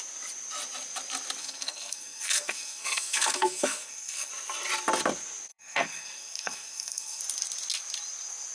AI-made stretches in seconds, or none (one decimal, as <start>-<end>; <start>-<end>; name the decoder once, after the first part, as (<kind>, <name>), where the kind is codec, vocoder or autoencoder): 1.4-4.3 (codec, SNAC); 5.5-7.2